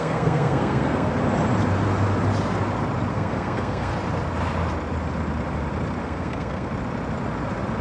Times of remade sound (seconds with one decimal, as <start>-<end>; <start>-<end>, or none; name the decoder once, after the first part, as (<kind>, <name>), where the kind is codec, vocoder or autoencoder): 0.0-1.1 (codec, SNAC); 3.1-3.9; 6.0-6.7